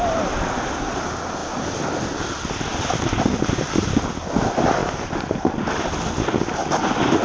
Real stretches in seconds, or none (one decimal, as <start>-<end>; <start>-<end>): 0.0-7.2